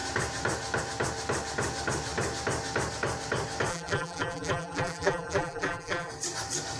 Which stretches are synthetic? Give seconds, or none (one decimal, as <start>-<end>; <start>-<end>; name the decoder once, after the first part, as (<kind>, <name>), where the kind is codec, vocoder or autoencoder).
3.7-6.1 (vocoder, BigVGAN v2)